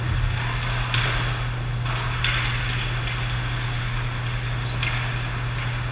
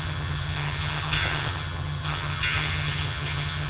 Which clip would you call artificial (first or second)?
second